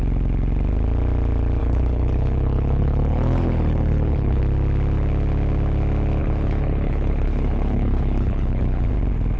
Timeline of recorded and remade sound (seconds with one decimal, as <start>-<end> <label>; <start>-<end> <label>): 0.0-1.6 recorded; 1.6-4.4 remade; 4.4-6.2 recorded; 6.2-8.9 remade; 8.9-9.4 recorded